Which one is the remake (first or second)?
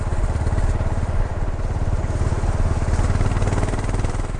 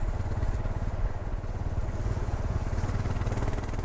second